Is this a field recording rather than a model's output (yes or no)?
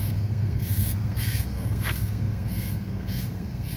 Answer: no